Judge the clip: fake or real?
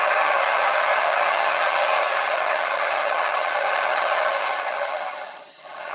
fake